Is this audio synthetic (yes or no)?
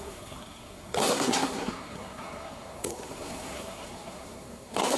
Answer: yes